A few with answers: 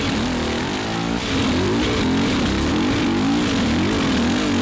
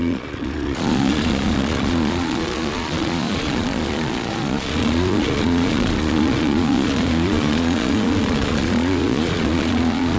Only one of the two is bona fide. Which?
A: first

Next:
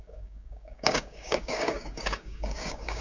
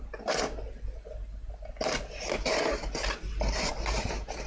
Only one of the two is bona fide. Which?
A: second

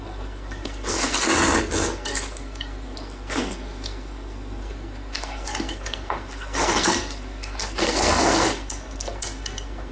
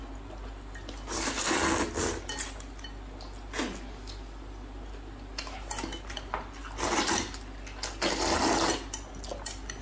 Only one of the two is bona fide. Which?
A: second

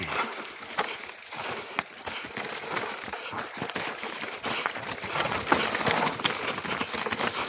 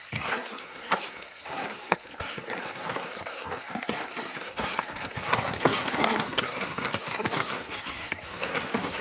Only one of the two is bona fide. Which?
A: first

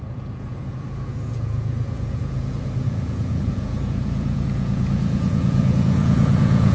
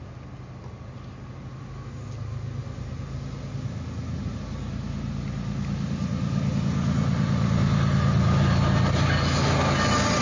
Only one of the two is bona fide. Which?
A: second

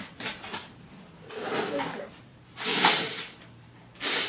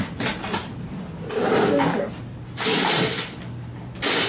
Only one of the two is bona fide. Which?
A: second